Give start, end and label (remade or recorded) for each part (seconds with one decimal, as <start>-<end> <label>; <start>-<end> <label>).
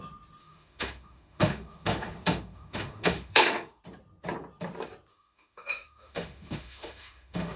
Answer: 0.0-0.4 recorded; 0.4-3.8 remade; 3.8-5.1 recorded; 5.1-7.6 remade